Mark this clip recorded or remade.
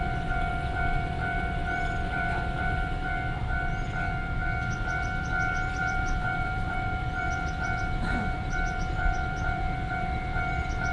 remade